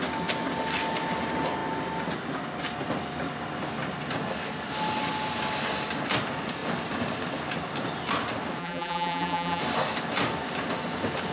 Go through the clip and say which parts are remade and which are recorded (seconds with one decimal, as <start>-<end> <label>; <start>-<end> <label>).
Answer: 0.0-8.6 recorded; 8.6-9.6 remade; 9.6-11.3 recorded